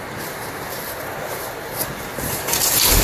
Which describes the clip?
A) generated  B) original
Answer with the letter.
A